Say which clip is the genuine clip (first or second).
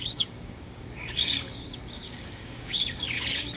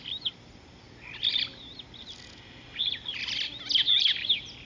second